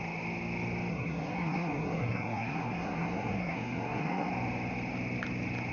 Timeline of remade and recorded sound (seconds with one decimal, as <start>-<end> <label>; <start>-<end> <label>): 0.0-0.9 recorded; 0.9-4.3 remade; 4.3-5.7 recorded